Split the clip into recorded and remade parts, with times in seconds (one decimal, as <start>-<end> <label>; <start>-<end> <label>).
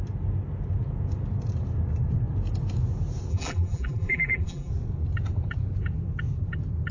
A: 0.0-3.3 recorded; 3.3-4.7 remade; 4.7-6.9 recorded